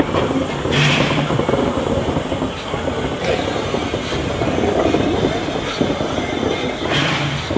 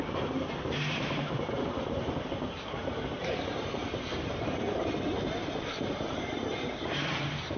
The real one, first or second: first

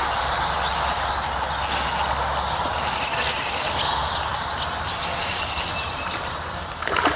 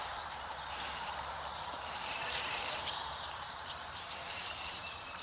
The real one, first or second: first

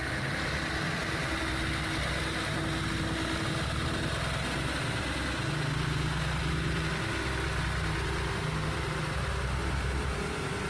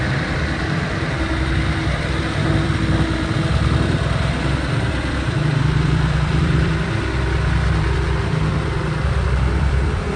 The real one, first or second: first